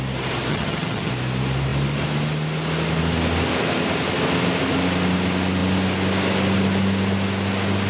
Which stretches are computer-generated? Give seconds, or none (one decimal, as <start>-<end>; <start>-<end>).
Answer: 0.5-1.1